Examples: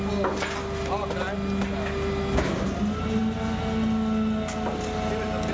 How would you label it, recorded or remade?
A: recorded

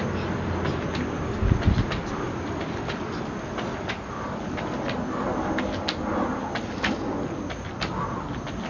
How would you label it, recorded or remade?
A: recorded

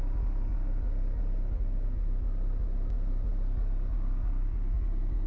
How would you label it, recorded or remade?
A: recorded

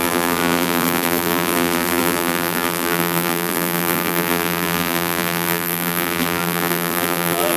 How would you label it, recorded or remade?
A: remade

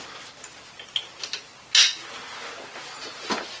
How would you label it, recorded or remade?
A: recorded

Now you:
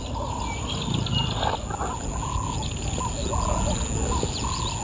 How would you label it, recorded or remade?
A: recorded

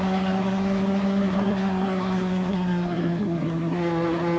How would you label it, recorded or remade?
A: remade